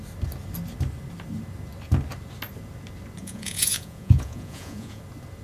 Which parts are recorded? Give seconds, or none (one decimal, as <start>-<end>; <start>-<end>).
0.0-3.2; 5.0-5.4